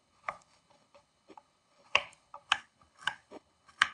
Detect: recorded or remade remade